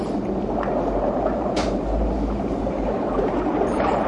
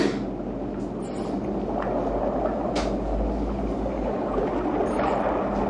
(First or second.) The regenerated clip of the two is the first